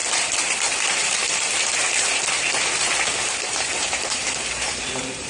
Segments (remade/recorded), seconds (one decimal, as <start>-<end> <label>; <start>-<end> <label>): 0.0-3.2 recorded; 3.2-5.3 remade